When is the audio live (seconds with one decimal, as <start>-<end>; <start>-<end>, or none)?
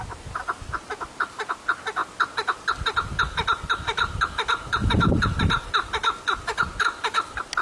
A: 0.0-7.6